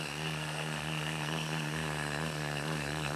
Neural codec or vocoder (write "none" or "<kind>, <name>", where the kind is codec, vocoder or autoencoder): codec, SNAC